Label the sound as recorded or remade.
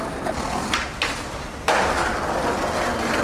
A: recorded